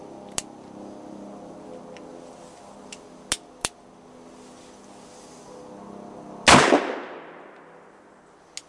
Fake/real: real